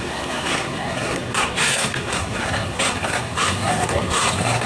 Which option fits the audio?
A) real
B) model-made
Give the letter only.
B